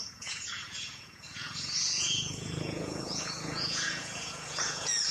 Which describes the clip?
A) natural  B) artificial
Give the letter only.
B